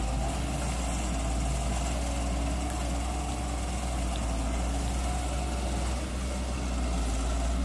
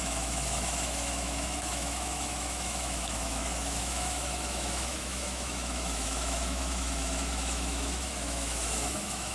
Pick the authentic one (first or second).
first